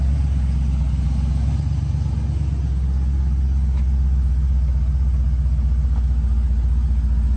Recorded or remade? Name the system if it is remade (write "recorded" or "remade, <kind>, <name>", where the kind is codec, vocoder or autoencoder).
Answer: recorded